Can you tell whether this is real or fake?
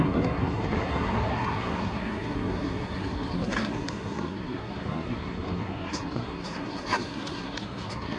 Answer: fake